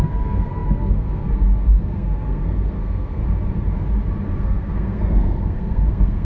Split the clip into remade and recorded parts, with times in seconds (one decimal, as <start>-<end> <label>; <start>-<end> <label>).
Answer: 0.0-3.2 remade; 3.2-4.4 recorded; 4.4-6.2 remade